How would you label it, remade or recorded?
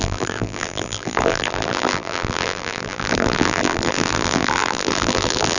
remade